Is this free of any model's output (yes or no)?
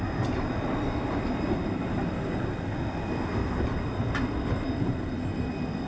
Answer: yes